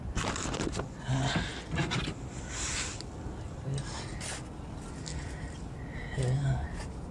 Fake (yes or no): no